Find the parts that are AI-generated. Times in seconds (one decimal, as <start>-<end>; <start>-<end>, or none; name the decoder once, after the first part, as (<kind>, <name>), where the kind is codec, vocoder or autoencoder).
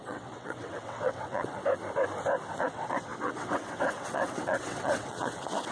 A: 0.0-1.6 (vocoder, WaveNeXt); 2.6-5.7